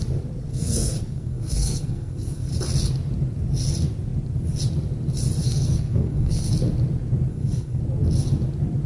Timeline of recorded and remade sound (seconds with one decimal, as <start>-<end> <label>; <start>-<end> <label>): 0.0-0.5 recorded; 0.5-2.5 remade; 2.5-5.4 recorded; 5.4-6.5 remade; 6.5-7.3 recorded; 7.3-7.8 remade; 7.8-8.9 recorded